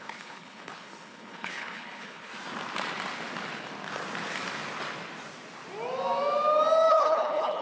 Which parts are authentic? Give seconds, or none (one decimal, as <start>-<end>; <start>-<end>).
2.3-6.9